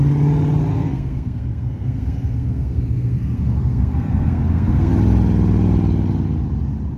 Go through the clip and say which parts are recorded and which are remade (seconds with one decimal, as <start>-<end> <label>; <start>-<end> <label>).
0.0-0.7 recorded; 0.7-4.9 remade; 4.9-7.0 recorded